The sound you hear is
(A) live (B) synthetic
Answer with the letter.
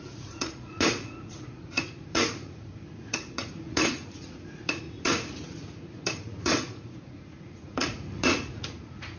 B